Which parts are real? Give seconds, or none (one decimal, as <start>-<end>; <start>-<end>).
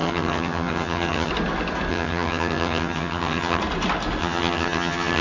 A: 1.3-1.9; 3.6-4.2